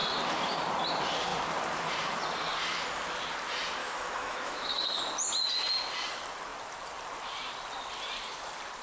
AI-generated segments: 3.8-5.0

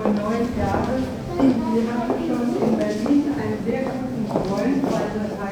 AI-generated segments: 1.7-3.6

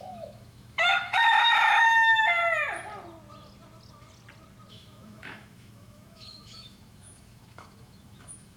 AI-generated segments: 0.0-2.4; 4.7-8.6